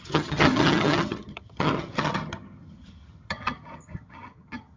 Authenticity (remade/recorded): remade